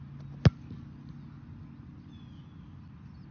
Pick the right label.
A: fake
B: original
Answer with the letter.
B